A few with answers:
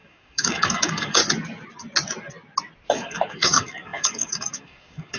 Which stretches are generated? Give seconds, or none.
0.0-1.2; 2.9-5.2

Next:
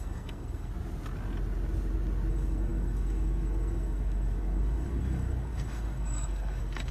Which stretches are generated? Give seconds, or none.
0.0-0.7; 2.3-6.9

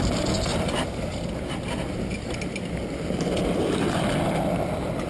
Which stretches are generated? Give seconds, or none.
none

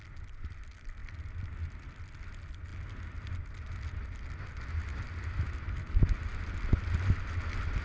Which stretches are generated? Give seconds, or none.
none

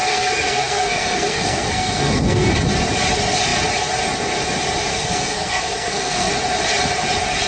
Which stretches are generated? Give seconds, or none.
0.0-2.5; 4.9-6.3

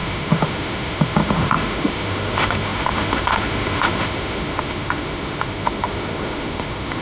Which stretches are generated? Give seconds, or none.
0.0-7.0

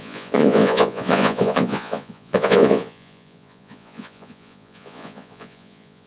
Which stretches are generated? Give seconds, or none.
0.0-6.1